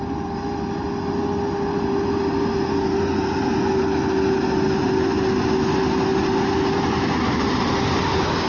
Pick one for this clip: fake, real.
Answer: real